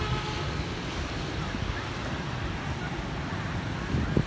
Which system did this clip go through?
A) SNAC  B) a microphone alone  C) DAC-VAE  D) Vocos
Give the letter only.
B